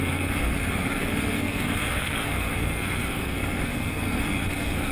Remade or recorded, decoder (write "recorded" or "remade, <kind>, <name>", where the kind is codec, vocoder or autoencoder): remade, codec, SNAC